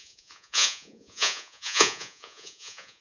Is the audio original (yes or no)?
no